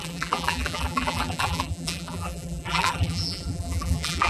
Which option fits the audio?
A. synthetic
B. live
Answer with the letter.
A